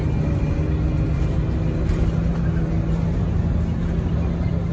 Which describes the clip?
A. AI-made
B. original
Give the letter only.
B